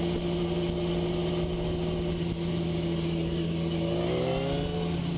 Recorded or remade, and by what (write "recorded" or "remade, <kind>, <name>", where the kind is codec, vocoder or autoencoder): recorded